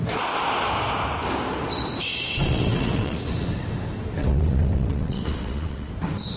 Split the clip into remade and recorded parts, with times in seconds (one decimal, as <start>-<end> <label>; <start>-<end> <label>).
0.0-2.1 recorded; 2.1-3.6 remade; 3.6-4.2 recorded; 4.2-5.9 remade; 5.9-6.4 recorded